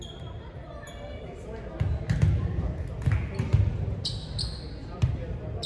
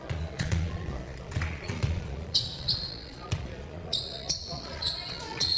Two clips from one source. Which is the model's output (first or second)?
second